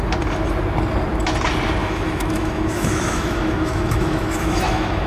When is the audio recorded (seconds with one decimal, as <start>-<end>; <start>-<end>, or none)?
0.0-1.8